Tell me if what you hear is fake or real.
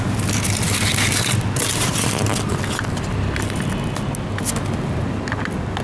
real